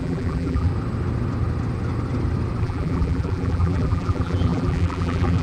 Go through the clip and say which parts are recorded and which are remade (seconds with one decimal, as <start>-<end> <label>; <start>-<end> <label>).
0.0-0.7 remade; 0.7-2.6 recorded; 2.6-5.4 remade